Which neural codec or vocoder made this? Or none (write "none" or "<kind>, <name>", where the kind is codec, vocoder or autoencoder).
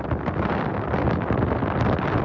none